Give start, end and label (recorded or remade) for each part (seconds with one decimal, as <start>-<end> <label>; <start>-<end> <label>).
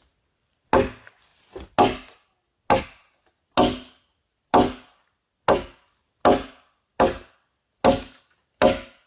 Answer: 0.0-9.1 recorded